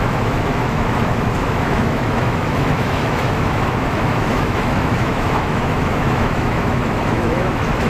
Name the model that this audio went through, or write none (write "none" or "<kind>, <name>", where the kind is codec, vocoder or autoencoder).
autoencoder, DAC-VAE